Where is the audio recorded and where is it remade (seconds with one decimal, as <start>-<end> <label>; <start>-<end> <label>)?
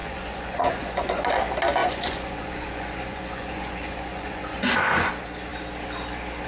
0.0-1.4 remade; 1.4-1.8 recorded; 1.8-5.1 remade; 5.1-6.5 recorded